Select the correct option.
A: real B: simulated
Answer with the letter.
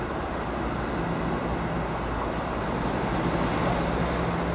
A